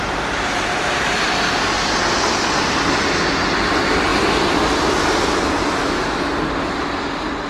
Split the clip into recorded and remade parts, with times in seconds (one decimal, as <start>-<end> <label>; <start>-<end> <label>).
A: 0.0-5.8 recorded; 5.8-6.3 remade; 6.3-7.5 recorded

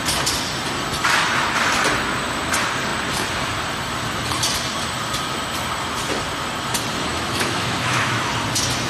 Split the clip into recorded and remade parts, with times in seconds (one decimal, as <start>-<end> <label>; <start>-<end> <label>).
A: 0.0-7.1 recorded; 7.1-8.3 remade; 8.3-8.9 recorded

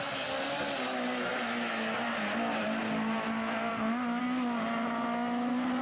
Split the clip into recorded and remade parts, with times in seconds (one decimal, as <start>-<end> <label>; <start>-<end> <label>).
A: 0.0-5.8 recorded

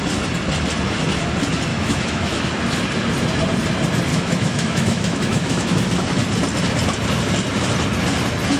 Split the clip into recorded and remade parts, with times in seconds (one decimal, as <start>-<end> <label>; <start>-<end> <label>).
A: 0.0-1.7 recorded; 1.7-2.5 remade; 2.5-4.1 recorded; 4.1-5.9 remade; 5.9-8.6 recorded

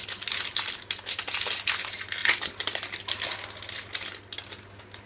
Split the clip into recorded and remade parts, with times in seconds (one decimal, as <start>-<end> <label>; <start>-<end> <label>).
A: 0.0-5.1 recorded

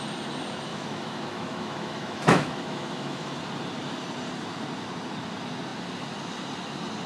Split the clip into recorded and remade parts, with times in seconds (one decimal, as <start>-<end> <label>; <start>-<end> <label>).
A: 0.0-0.7 recorded; 0.7-3.4 remade; 3.4-7.1 recorded

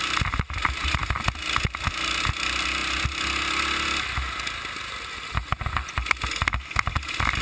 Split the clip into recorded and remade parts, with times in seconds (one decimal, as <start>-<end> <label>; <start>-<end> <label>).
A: 0.0-7.4 recorded